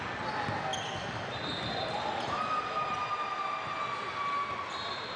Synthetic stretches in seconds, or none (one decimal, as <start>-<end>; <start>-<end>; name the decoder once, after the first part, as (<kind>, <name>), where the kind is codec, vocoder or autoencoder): none